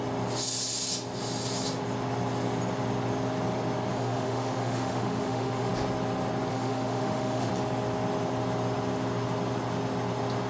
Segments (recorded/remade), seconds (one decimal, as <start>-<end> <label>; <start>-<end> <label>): 0.0-3.9 recorded; 3.9-5.7 remade; 5.7-6.5 recorded; 6.5-7.5 remade; 7.5-10.5 recorded